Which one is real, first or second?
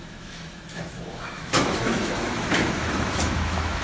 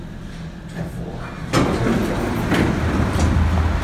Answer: second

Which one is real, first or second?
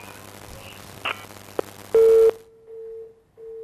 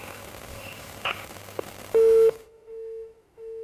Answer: first